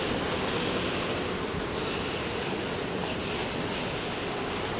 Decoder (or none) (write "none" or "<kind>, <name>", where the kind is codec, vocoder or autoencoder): none